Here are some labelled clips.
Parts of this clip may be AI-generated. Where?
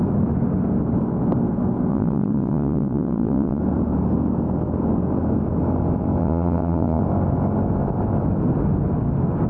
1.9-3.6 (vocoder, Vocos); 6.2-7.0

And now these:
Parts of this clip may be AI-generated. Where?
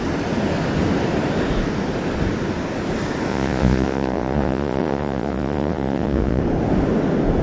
3.3-6.4 (vocoder, Vocos)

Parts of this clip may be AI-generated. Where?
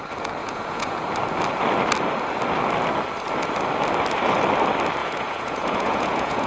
0.4-1.1 (vocoder, Vocos); 5.0-6.5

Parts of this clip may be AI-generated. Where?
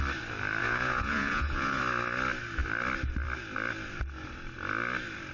0.6-1.8 (vocoder, Vocos)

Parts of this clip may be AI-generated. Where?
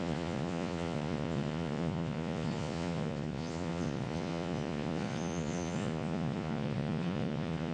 0.0-7.7 (vocoder, Vocos)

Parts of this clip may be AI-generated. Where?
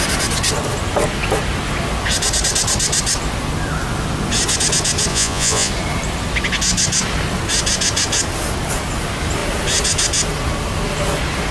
5.1-5.7 (vocoder, Vocos)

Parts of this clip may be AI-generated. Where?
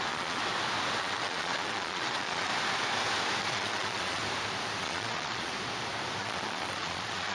0.0-0.4 (vocoder, Vocos); 1.0-2.5; 3.4-4.2; 4.8-5.5; 6.2-7.3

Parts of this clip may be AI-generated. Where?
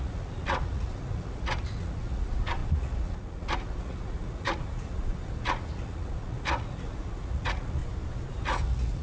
0.0-7.8 (vocoder, Vocos); 8.3-9.0